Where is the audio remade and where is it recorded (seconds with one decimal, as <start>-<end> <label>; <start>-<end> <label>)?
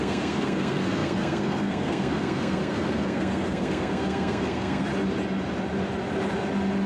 0.0-4.9 remade; 4.9-6.9 recorded